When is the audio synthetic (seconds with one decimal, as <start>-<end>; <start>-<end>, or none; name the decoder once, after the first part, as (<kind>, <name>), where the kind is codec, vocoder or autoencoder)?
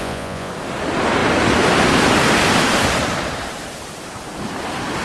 0.0-0.5 (vocoder, Vocos)